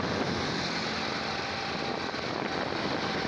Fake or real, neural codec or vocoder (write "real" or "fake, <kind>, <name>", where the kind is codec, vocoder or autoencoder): real